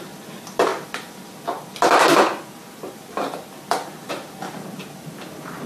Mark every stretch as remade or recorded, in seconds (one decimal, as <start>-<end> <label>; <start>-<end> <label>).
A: 0.0-5.7 recorded